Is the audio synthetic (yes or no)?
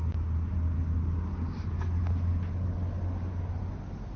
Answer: no